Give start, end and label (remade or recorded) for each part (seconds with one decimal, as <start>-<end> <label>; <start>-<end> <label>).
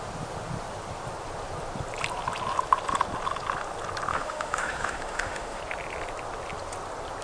0.0-4.1 recorded; 4.1-5.6 remade; 5.6-7.2 recorded